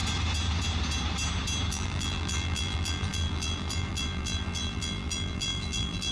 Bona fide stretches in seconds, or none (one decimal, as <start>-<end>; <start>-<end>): 0.0-1.7